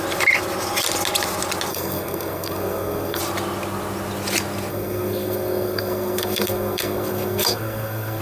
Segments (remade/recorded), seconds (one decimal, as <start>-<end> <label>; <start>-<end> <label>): 0.0-1.7 recorded; 1.7-3.2 remade; 3.2-4.7 recorded; 4.7-8.2 remade